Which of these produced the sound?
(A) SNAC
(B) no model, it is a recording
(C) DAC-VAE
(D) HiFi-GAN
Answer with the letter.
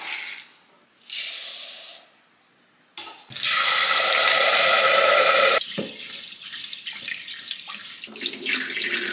B